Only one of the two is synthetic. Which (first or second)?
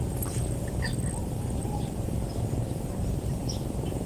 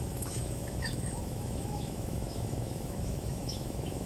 second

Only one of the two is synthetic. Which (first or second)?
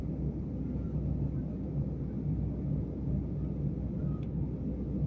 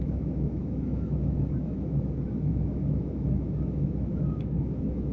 second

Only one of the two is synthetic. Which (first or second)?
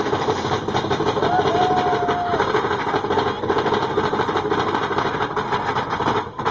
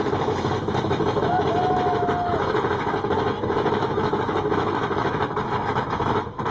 second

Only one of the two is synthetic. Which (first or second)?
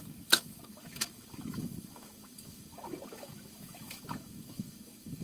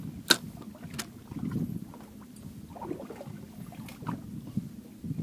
first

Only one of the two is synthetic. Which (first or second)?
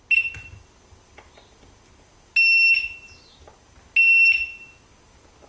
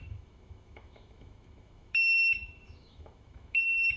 second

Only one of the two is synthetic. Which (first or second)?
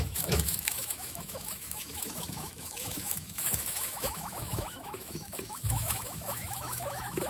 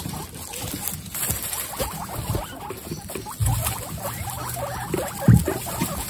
first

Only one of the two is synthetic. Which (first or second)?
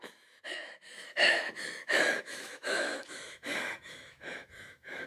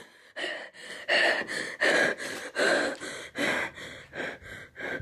first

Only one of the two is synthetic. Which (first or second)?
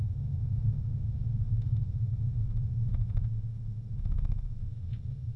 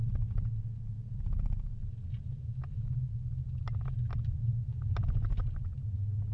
first